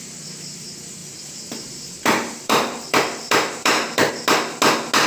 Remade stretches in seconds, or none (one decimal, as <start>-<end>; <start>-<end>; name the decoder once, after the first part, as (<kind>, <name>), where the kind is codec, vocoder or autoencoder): 1.0-4.1 (vocoder, BigVGAN v2)